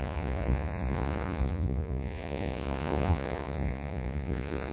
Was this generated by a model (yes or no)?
yes